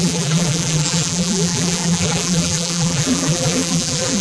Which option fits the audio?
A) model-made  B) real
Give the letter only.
A